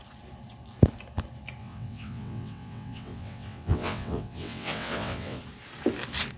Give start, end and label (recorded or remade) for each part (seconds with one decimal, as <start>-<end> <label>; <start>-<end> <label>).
0.0-1.6 recorded; 1.6-5.4 remade; 5.4-6.4 recorded